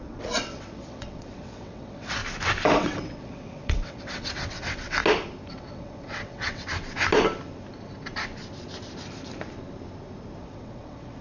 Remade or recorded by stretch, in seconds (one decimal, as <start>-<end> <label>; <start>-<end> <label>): 0.0-2.2 remade; 2.2-2.7 recorded; 2.7-5.0 remade; 5.0-5.5 recorded; 5.5-6.7 remade; 6.7-10.4 recorded; 10.4-11.2 remade